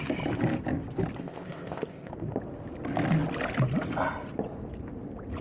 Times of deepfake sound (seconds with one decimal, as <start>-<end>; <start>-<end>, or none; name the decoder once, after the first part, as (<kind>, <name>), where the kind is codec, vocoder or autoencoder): 1.2-2.1 (codec, ZipCodec)